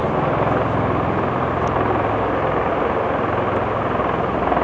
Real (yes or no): yes